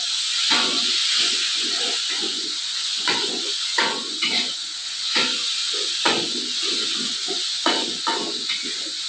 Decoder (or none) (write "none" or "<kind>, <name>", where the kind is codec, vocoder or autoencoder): vocoder, Vocos